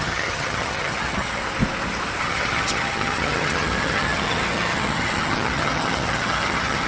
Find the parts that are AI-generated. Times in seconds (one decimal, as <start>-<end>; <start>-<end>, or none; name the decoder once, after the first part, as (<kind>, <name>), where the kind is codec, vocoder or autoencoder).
0.0-1.4 (vocoder, HiFi-GAN); 2.2-6.9